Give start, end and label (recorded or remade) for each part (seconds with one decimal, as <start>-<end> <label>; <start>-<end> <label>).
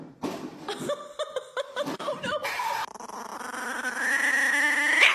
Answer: 0.0-0.5 recorded; 0.5-2.9 remade; 2.9-3.3 recorded; 3.3-4.3 remade; 4.3-5.1 recorded